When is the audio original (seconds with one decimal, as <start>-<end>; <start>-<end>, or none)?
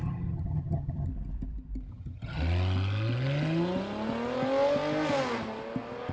1.1-1.9; 2.4-6.1